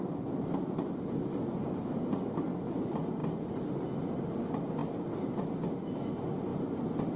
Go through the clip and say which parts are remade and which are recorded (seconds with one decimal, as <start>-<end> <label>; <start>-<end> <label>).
0.0-7.2 recorded